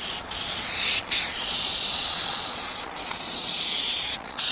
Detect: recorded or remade remade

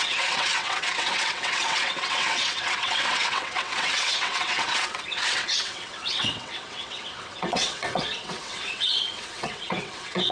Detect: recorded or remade remade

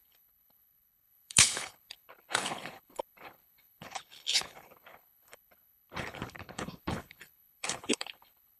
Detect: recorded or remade remade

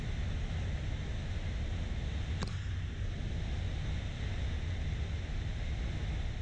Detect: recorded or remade recorded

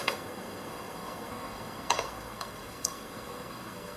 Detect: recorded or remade remade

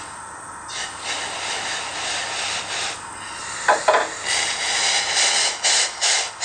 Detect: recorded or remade recorded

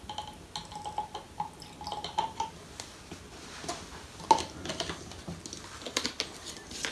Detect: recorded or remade recorded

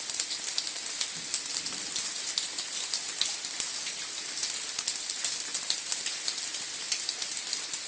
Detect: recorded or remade recorded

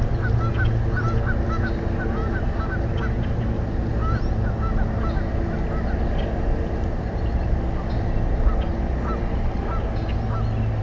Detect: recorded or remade recorded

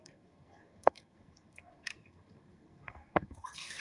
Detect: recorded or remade remade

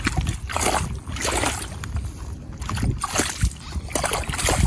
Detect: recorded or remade recorded